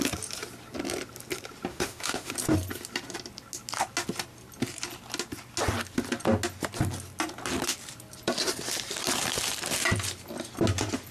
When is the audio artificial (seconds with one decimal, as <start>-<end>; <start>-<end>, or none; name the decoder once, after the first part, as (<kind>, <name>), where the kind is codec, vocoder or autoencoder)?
1.7-2.3 (autoencoder, DAC-VAE)